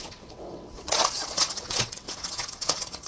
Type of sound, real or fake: fake